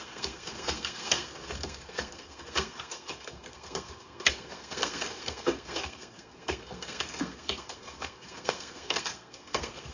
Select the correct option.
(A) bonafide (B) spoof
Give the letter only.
B